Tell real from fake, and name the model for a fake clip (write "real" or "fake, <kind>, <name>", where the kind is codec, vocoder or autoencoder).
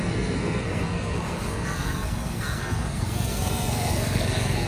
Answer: fake, codec, SNAC